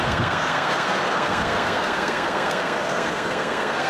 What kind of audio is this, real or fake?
fake